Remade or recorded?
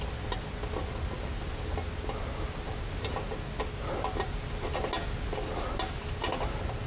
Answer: recorded